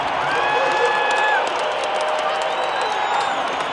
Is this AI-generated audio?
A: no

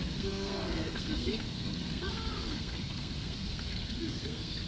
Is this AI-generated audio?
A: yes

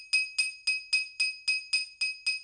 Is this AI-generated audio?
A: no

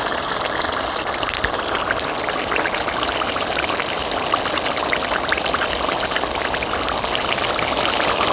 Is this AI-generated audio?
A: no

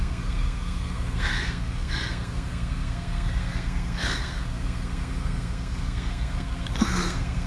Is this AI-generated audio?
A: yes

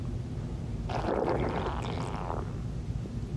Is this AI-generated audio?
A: no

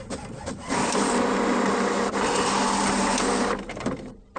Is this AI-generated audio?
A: no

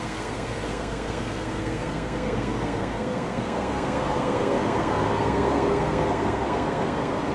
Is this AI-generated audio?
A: yes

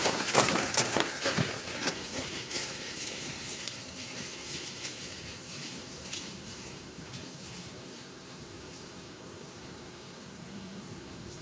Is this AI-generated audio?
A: yes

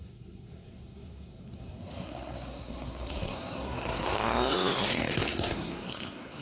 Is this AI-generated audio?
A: yes